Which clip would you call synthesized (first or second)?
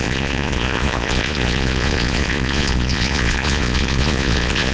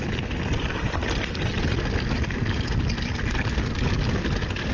first